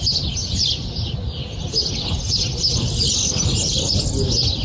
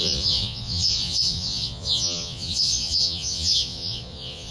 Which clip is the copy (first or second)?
second